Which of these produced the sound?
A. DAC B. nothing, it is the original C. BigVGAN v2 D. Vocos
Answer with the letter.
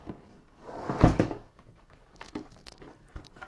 A